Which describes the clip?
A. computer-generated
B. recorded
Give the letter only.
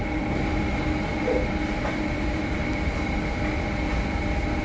A